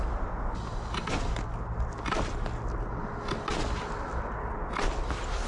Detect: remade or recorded recorded